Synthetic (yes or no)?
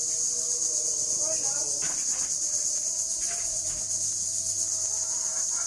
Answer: no